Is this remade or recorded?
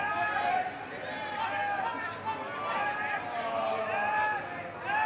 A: recorded